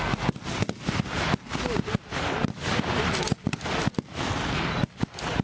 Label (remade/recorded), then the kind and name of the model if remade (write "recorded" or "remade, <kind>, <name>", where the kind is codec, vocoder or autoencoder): recorded